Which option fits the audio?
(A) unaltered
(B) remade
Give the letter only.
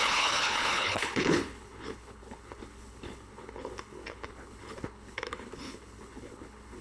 B